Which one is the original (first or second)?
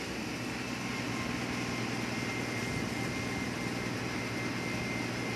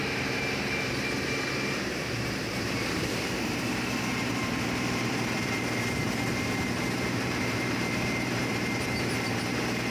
first